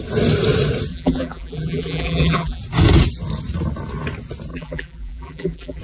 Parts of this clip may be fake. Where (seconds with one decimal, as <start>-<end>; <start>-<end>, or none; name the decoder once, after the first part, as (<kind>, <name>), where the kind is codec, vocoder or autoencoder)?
0.9-2.6 (vocoder, BigVGAN v2); 4.5-5.8